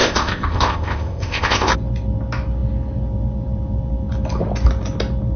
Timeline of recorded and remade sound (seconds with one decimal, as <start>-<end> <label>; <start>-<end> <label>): 0.0-1.7 remade; 1.7-5.4 recorded